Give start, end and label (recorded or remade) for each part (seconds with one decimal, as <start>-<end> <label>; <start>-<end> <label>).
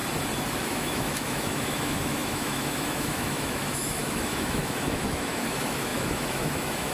0.0-0.5 recorded; 0.5-6.9 remade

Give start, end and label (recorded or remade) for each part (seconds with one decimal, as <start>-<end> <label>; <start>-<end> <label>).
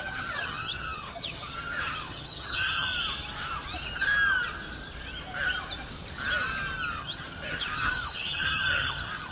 0.0-2.9 remade; 2.9-7.0 recorded; 7.0-9.3 remade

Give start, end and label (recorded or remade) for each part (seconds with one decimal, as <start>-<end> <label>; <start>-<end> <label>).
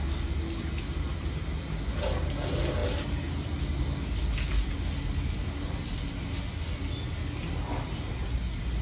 0.0-8.8 recorded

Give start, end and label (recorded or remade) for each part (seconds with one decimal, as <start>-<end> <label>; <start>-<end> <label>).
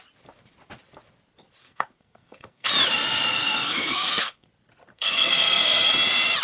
0.0-1.6 recorded; 1.6-2.7 remade; 2.7-3.3 recorded; 3.3-4.5 remade; 4.5-4.9 recorded; 4.9-5.9 remade; 5.9-6.4 recorded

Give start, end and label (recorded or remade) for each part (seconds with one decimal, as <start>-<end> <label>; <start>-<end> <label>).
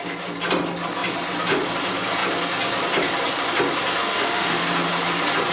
0.0-4.0 recorded; 4.0-4.6 remade; 4.6-5.5 recorded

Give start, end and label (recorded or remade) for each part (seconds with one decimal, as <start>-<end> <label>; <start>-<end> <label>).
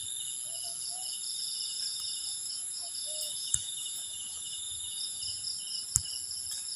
0.0-1.7 recorded; 1.7-5.5 remade; 5.5-6.8 recorded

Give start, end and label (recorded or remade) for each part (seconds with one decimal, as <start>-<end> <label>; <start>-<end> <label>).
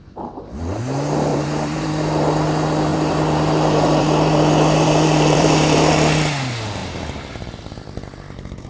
0.0-1.3 recorded; 1.3-1.9 remade; 1.9-2.9 recorded; 2.9-5.9 remade; 5.9-6.8 recorded; 6.8-7.6 remade; 7.6-8.7 recorded